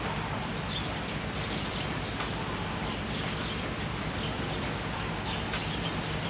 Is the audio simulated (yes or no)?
no